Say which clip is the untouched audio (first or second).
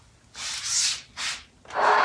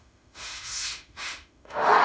first